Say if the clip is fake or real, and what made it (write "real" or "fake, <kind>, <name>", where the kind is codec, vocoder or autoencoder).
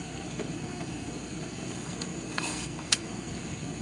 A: fake, codec, SNAC